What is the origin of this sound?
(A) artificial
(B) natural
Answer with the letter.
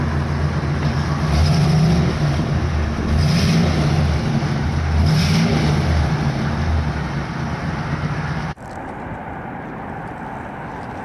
B